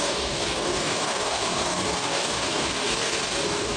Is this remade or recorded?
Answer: remade